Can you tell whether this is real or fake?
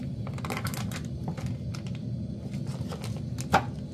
real